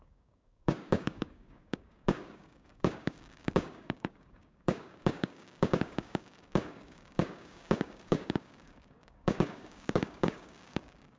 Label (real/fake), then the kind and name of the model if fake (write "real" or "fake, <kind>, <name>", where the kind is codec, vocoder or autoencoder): fake, codec, DAC